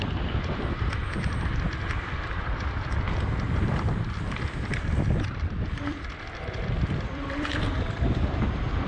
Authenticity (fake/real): fake